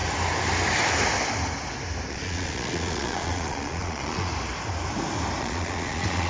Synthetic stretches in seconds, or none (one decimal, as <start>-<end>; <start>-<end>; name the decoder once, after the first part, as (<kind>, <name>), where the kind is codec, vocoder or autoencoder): 2.1-4.3 (vocoder, Vocos); 5.4-6.3